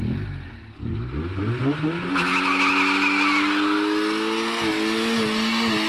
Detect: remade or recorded recorded